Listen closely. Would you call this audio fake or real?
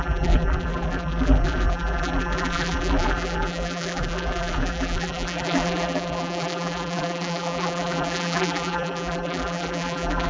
fake